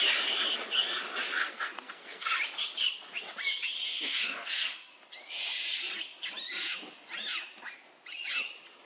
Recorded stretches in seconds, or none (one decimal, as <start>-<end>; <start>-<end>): 0.0-1.4; 2.3-3.9; 4.9-8.9